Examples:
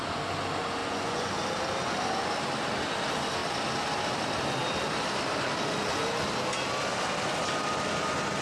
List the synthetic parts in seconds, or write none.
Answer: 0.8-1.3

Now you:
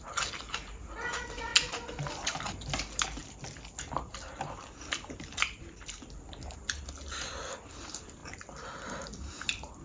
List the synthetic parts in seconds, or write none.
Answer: none

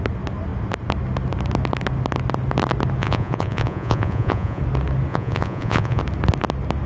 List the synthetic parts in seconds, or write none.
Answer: 3.0-4.6; 5.1-6.0